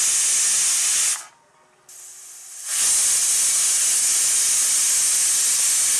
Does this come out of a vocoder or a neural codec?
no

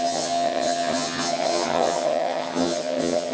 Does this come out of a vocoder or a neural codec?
yes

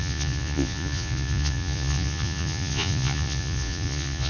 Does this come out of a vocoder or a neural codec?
yes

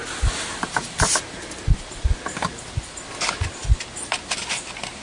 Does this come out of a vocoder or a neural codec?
no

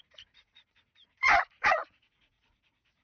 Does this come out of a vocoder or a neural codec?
yes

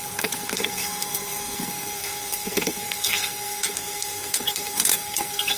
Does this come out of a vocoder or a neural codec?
yes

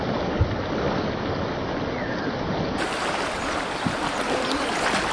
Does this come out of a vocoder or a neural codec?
no